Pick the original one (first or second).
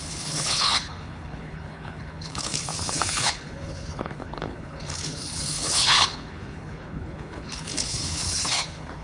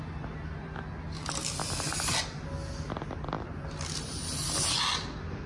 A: second